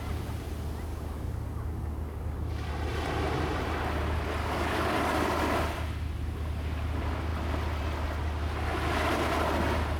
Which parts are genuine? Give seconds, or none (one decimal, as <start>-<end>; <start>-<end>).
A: 0.0-0.9; 2.7-4.4; 5.0-10.0